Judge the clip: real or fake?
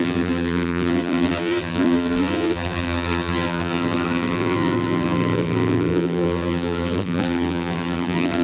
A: fake